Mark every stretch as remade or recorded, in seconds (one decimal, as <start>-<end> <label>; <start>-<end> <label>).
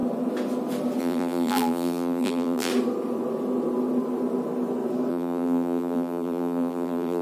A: 0.0-1.0 recorded; 1.0-2.7 remade; 2.7-5.1 recorded; 5.1-7.2 remade